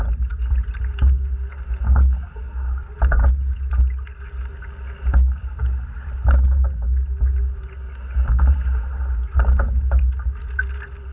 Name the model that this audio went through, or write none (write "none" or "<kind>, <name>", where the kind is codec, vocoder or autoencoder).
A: none